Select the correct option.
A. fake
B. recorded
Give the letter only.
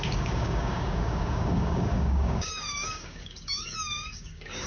A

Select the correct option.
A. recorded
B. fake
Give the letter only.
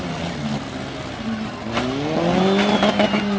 A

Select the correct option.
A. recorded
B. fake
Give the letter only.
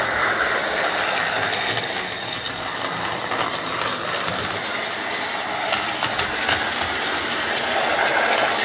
A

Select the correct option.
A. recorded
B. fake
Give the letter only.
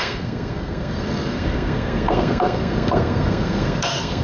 B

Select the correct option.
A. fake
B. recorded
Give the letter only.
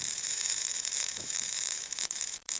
A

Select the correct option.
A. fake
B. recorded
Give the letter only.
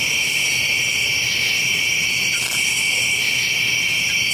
B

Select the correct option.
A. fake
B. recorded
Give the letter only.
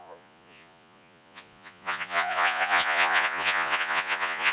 A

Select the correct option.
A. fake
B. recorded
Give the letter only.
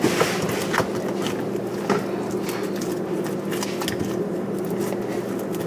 B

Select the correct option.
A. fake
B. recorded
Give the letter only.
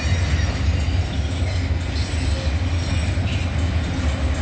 B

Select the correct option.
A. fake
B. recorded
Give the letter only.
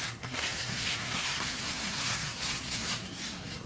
A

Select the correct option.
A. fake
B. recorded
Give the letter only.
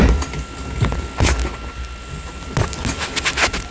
B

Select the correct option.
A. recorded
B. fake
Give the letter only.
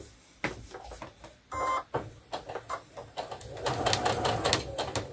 A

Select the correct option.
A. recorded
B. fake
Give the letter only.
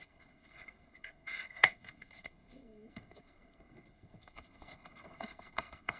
B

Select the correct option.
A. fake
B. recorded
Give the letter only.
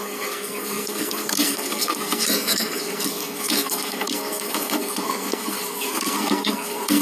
A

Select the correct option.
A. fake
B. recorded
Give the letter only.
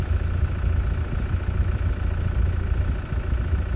B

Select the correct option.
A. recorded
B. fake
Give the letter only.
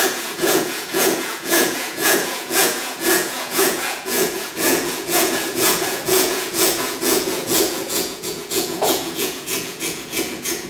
B